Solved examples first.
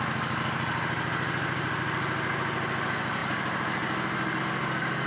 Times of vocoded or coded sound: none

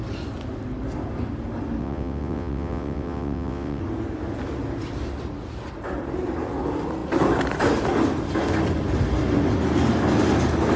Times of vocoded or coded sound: 1.8-3.8

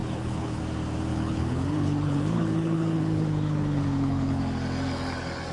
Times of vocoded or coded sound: 0.0-0.6; 1.1-4.4

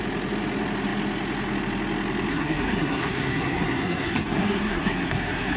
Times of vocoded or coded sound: 2.3-5.6

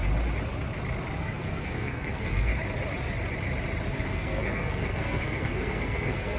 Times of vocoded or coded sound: 1.2-2.5; 3.9-6.4

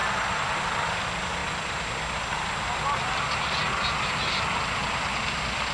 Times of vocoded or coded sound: 0.0-0.6

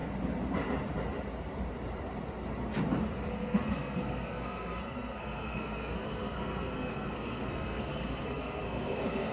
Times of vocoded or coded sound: 3.3-9.3